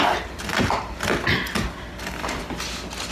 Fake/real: real